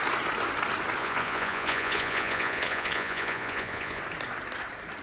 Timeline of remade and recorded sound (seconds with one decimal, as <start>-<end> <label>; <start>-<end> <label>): 0.0-1.0 recorded; 1.0-4.0 remade; 4.0-5.0 recorded

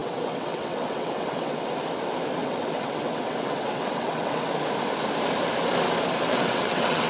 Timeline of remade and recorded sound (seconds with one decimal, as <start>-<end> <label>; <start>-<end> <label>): 0.0-1.7 remade; 1.7-2.4 recorded; 2.4-4.5 remade; 4.5-6.3 recorded; 6.3-7.1 remade

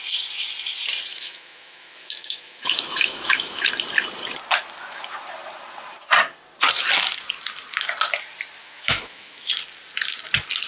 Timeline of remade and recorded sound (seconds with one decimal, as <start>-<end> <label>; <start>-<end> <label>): 0.0-1.1 recorded; 1.1-3.7 remade; 3.7-8.6 recorded; 8.6-9.5 remade; 9.5-10.7 recorded

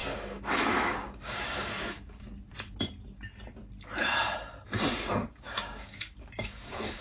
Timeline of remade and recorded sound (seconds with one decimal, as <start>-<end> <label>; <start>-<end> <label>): 0.0-2.2 remade; 2.2-5.1 recorded; 5.1-7.0 remade

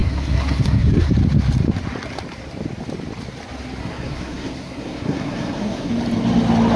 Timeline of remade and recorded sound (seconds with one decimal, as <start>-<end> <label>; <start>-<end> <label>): 0.0-1.1 remade; 1.1-3.8 recorded; 3.8-5.9 remade; 5.9-6.8 recorded